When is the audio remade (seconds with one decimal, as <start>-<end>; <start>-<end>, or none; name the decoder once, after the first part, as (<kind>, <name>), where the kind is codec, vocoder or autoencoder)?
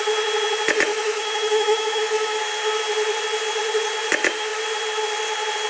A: 0.9-2.4 (autoencoder, DAC-VAE)